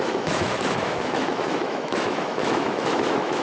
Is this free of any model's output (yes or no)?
no